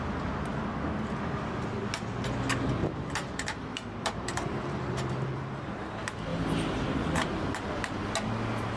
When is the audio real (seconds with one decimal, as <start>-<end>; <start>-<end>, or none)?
0.0-2.8; 5.8-6.3; 7.8-8.8